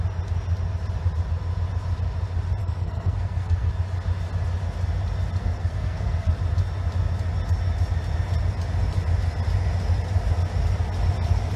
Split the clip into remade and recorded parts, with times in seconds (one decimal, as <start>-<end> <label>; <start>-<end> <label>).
0.0-2.6 recorded; 2.6-3.7 remade; 3.7-5.4 recorded; 5.4-6.3 remade; 6.3-11.6 recorded